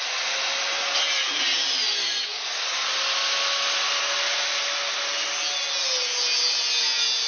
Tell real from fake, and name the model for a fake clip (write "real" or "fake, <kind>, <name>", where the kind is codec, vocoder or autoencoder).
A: real